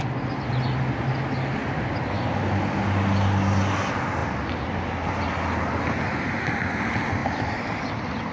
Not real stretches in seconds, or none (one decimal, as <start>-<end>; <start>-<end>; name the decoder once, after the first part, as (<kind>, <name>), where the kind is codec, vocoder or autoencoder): 1.6-2.3 (vocoder, BigVGAN v2); 7.2-7.9